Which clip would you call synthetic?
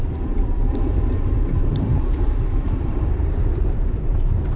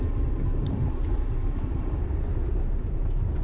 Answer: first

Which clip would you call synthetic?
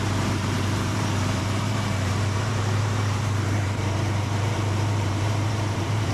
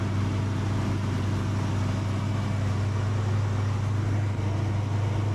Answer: first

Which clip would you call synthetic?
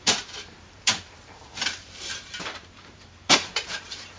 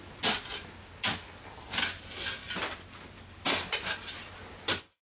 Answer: first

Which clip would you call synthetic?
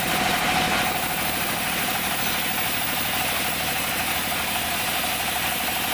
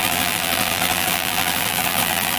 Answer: second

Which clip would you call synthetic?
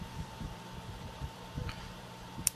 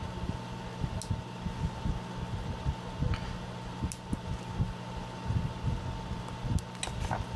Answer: first